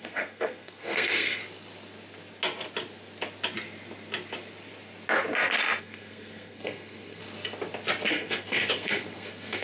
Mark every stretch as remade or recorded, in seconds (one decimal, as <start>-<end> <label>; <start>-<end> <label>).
0.0-1.4 remade; 1.4-5.8 recorded; 5.8-7.2 remade; 7.2-8.1 recorded; 8.1-9.6 remade